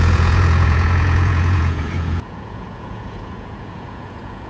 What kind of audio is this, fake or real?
fake